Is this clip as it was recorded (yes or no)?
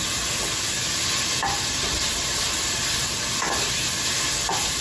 yes